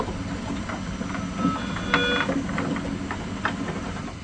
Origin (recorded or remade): recorded